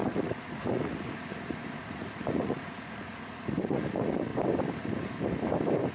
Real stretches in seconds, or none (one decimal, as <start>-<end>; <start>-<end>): 4.3-5.9